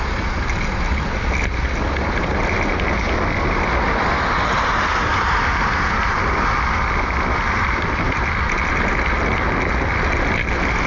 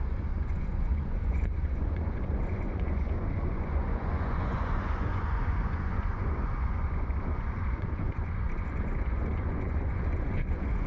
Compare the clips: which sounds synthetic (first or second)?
second